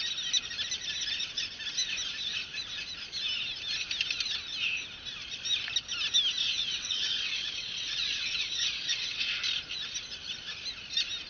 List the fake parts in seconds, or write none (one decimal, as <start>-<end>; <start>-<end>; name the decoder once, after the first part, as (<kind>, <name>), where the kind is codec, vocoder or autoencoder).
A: 6.4-9.4 (vocoder, WaveNeXt)